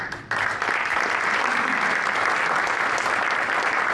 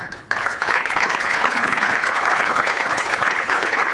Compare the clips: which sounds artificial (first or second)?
second